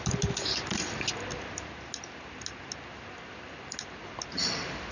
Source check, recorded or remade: recorded